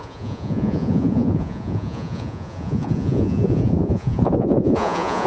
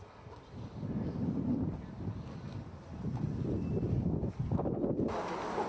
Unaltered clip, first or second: second